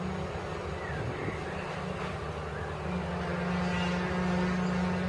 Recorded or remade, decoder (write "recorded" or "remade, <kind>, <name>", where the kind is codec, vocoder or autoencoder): recorded